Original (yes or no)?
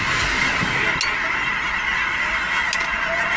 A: yes